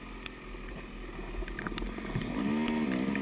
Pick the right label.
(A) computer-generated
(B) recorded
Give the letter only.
B